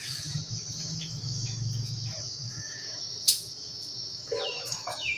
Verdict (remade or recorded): remade